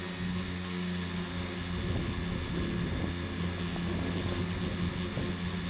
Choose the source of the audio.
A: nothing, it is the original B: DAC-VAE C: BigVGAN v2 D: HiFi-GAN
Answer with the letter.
A